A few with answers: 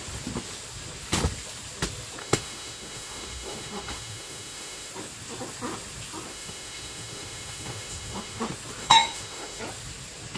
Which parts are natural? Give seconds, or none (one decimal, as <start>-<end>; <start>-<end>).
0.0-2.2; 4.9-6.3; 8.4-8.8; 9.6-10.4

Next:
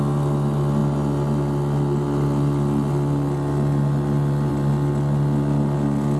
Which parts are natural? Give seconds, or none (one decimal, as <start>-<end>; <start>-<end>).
0.0-6.2

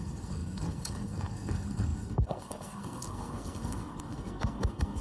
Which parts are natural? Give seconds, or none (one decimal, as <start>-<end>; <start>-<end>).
none